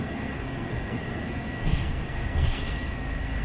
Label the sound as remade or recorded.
remade